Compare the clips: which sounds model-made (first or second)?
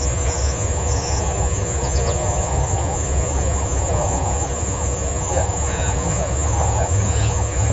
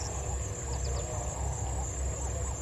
first